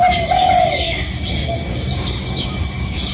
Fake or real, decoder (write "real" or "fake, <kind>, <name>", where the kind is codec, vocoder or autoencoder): fake, codec, DAC